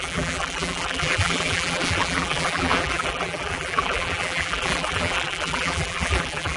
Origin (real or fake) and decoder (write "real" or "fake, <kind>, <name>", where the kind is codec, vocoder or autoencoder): fake, vocoder, BigVGAN v2